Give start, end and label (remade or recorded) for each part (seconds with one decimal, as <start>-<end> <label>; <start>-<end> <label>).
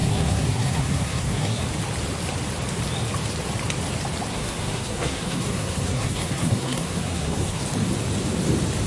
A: 0.0-1.6 remade; 1.6-4.3 recorded; 4.3-7.6 remade; 7.6-8.9 recorded